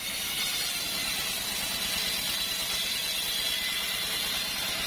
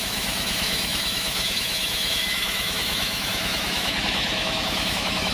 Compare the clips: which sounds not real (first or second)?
second